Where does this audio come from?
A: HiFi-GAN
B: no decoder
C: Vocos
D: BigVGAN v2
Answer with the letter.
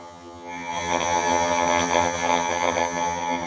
A